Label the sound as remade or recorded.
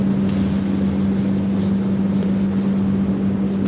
recorded